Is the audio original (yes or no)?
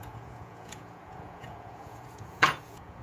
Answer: no